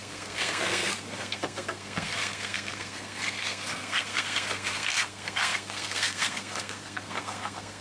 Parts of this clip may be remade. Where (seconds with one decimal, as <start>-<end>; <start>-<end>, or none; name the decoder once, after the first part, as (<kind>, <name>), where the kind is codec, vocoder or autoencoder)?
0.0-7.8 (codec, SNAC)